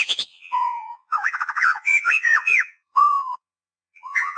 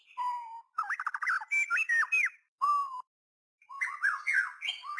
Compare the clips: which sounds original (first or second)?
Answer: second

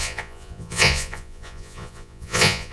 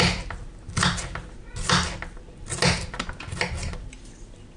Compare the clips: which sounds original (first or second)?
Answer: second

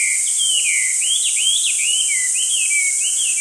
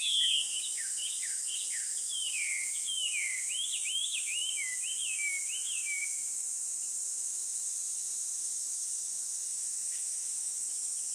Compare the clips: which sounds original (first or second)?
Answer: first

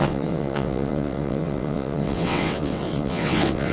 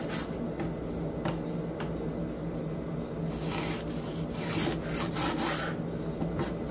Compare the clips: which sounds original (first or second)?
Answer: second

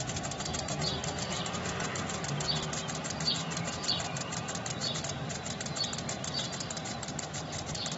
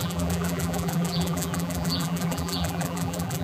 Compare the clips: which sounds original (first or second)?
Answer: first